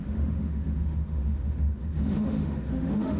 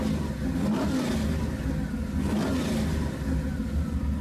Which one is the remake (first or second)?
first